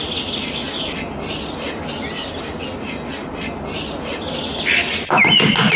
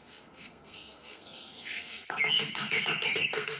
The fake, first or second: second